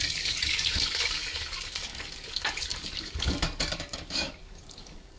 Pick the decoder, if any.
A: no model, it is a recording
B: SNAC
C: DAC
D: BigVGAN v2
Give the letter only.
C